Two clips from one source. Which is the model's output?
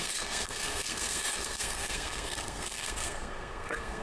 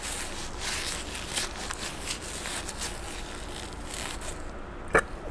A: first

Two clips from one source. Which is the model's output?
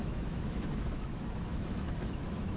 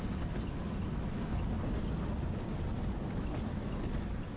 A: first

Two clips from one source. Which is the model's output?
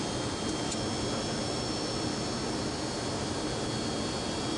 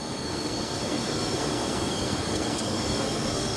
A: second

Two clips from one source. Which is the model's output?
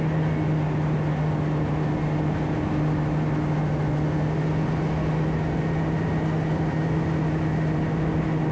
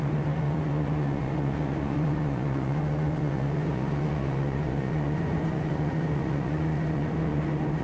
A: second